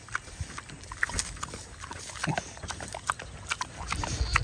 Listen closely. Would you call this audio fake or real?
real